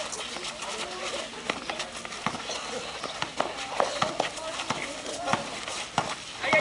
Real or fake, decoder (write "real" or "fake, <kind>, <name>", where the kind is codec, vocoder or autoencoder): real